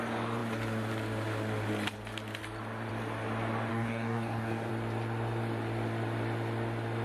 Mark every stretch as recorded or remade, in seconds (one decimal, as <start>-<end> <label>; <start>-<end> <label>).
0.0-3.7 recorded; 3.7-4.7 remade; 4.7-7.0 recorded

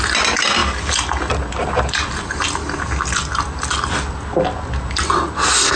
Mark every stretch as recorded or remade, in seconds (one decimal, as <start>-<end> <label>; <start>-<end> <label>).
0.0-5.8 recorded